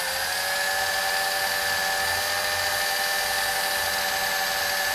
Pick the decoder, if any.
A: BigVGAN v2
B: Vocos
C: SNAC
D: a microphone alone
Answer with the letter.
D